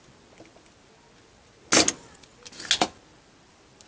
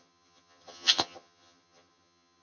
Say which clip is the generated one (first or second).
second